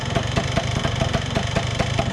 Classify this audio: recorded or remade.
remade